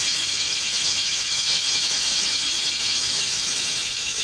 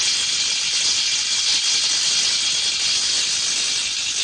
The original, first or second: second